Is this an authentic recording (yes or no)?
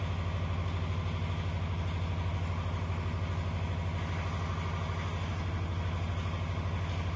yes